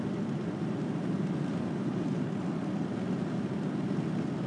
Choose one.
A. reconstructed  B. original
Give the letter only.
B